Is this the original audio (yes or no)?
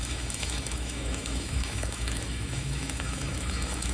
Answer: no